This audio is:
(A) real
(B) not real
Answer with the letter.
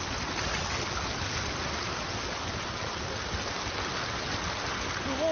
A